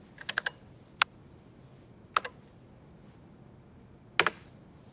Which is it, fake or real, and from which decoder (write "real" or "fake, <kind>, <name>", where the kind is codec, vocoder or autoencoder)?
real